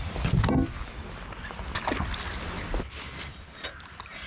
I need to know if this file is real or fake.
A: real